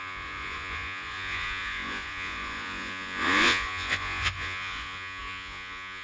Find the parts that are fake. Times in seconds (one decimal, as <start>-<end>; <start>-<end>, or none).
0.0-6.0